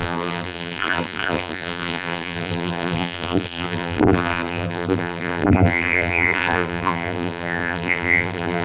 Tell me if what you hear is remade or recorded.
remade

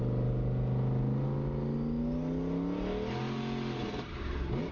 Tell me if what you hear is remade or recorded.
recorded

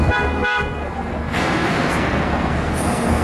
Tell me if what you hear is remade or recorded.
remade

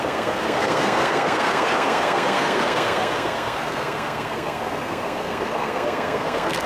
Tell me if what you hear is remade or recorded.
remade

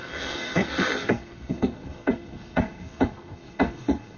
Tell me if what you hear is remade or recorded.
remade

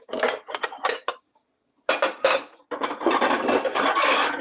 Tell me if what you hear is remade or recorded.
recorded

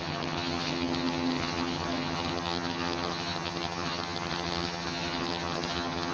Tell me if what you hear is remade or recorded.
remade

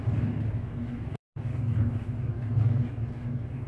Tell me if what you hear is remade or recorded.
remade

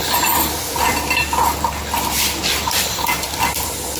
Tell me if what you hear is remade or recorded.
remade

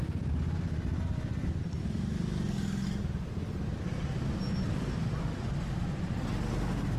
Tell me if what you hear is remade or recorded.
recorded